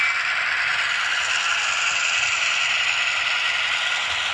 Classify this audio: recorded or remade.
recorded